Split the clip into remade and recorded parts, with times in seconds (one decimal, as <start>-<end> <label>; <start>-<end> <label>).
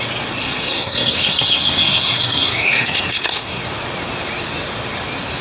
0.0-0.4 recorded; 0.4-3.6 remade; 3.6-5.4 recorded